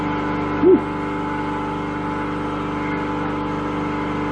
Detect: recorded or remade recorded